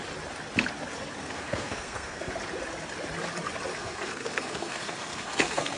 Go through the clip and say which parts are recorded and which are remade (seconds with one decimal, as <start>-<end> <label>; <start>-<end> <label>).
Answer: 0.0-1.2 recorded; 1.2-2.3 remade; 2.3-3.7 recorded; 3.7-5.8 remade